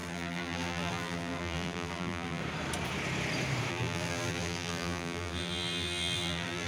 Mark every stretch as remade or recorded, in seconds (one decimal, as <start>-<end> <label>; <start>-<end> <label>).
0.0-2.4 remade; 2.4-3.7 recorded; 3.7-6.7 remade